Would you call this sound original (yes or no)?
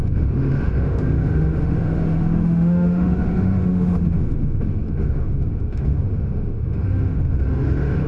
no